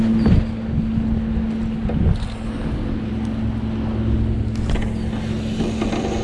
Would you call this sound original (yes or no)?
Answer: yes